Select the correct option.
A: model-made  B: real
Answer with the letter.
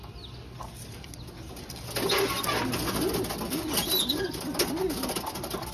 B